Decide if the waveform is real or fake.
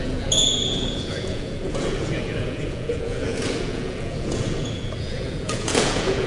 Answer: fake